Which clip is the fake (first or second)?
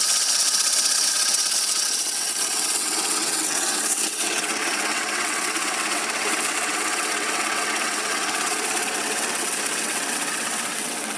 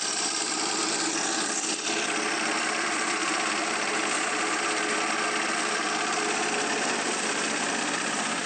first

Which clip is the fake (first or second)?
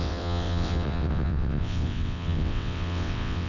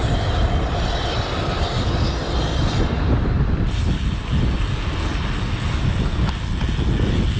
first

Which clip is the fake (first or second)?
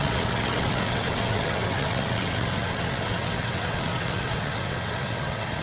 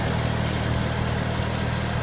first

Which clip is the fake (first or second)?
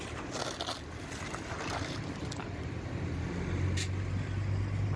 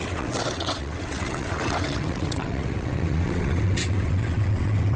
second